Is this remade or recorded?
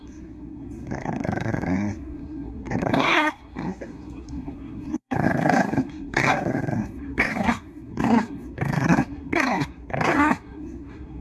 remade